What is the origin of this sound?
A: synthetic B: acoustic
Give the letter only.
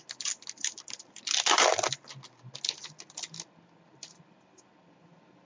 B